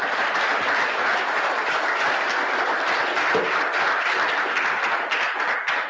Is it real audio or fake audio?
real